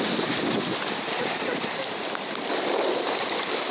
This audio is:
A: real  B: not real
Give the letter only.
A